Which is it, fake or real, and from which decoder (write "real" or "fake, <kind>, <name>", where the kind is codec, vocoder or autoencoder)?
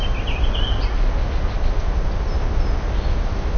real